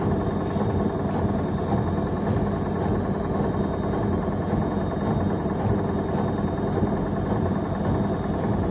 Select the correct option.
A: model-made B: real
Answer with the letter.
B